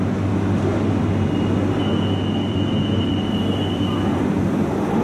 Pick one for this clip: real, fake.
real